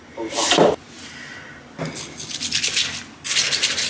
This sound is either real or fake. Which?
real